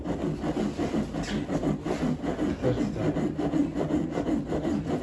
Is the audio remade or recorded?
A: recorded